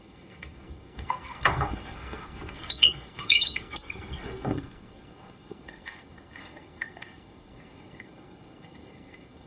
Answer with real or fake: fake